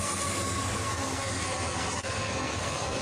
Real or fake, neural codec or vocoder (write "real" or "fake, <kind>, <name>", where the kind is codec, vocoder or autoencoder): fake, codec, SNAC